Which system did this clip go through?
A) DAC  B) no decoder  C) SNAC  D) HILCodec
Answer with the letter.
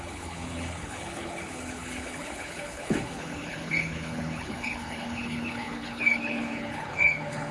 D